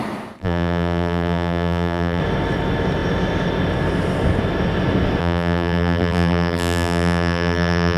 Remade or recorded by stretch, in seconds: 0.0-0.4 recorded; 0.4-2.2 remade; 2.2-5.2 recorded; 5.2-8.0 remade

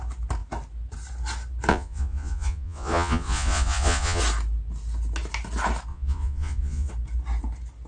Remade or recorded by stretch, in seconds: 0.0-1.7 recorded; 1.7-4.2 remade; 4.2-5.9 recorded; 5.9-6.9 remade; 6.9-7.9 recorded